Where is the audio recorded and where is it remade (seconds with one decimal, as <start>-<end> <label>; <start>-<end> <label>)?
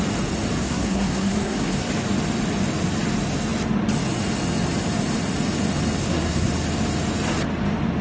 0.0-0.6 recorded; 0.6-1.9 remade; 1.9-6.0 recorded; 6.0-6.5 remade; 6.5-8.0 recorded